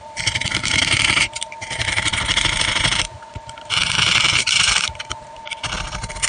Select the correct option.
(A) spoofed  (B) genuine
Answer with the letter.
A